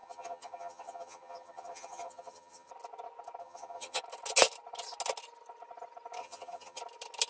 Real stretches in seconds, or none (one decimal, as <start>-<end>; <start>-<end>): 2.7-3.4; 4.0-6.2; 6.8-7.3